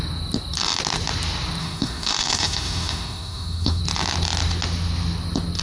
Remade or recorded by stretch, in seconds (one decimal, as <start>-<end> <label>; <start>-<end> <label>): 0.0-1.6 recorded; 1.6-3.8 remade; 3.8-5.6 recorded